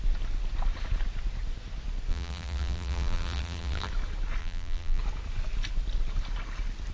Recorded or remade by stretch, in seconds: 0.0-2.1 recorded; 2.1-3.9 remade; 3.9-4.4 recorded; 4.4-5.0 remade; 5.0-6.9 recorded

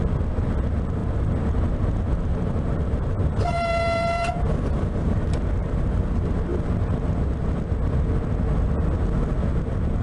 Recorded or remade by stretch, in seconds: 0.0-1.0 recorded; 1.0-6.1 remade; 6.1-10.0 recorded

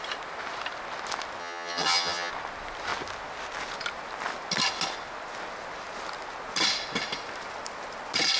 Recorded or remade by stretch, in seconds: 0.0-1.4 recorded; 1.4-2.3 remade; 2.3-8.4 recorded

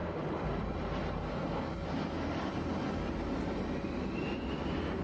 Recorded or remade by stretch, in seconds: 0.0-1.1 remade; 1.1-5.0 recorded

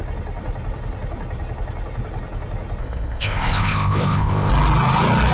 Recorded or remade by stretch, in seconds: 0.0-2.8 recorded; 2.8-4.5 remade; 4.5-5.3 recorded